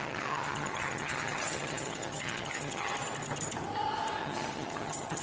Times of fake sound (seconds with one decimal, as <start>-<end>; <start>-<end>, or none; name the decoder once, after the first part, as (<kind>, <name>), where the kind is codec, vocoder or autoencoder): 0.0-2.9 (vocoder, HiFi-GAN); 4.2-5.2